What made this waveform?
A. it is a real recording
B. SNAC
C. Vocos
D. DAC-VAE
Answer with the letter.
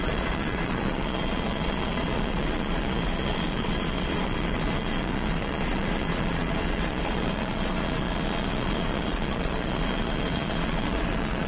C